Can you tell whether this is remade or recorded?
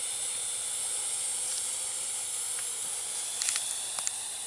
recorded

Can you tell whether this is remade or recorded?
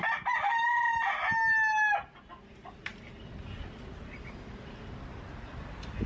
recorded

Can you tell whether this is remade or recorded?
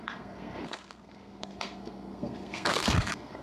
remade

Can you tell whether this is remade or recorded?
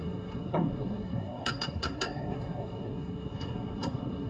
remade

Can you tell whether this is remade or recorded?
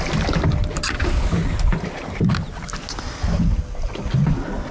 recorded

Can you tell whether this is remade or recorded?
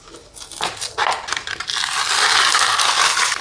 recorded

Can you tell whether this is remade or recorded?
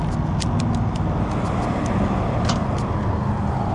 recorded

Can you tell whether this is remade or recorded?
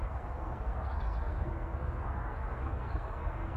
remade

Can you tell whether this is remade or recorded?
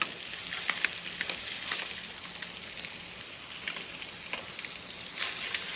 recorded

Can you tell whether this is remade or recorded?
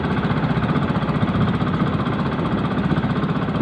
recorded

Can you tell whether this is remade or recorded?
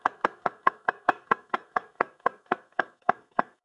remade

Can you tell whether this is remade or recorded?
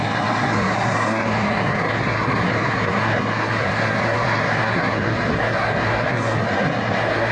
remade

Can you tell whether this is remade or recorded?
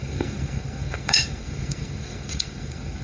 remade